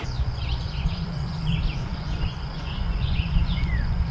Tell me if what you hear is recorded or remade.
remade